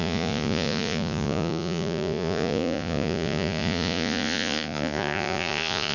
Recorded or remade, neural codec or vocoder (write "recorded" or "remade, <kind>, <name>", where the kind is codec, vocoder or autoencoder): remade, vocoder, Vocos